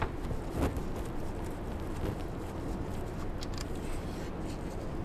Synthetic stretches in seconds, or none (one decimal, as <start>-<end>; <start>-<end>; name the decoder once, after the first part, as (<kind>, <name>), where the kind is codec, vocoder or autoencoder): none